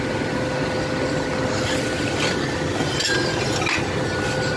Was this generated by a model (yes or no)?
no